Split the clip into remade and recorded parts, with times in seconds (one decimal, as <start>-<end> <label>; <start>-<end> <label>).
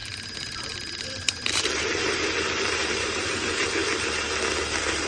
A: 0.0-3.8 remade; 3.8-5.1 recorded